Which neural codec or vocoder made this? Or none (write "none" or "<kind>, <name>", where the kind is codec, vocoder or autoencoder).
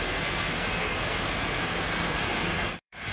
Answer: codec, SNAC